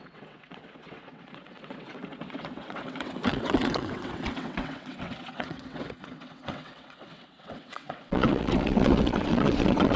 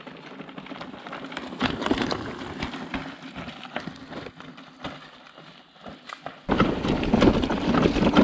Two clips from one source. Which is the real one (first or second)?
second